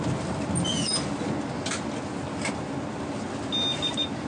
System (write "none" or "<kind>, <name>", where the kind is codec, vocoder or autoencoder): none